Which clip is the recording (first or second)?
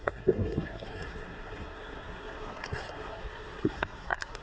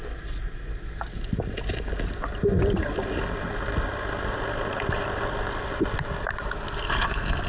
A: second